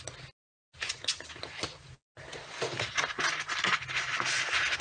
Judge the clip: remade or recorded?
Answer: recorded